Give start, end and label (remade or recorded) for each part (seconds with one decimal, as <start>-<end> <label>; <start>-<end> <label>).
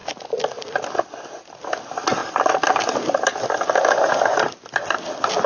0.0-5.5 recorded